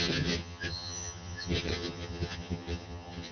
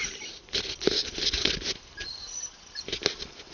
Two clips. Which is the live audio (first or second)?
second